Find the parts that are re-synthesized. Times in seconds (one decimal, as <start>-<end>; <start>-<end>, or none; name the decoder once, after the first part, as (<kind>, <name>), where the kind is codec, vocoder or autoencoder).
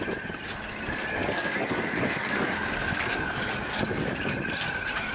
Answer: 1.2-4.3 (codec, DAC)